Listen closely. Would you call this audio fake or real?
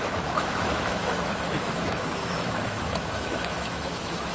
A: fake